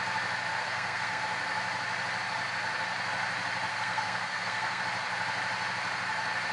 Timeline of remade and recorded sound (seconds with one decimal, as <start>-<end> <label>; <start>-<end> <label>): 0.0-0.5 recorded; 0.5-1.2 remade; 1.2-3.7 recorded; 3.7-4.8 remade; 4.8-6.5 recorded